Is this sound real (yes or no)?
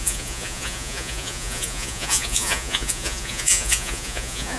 no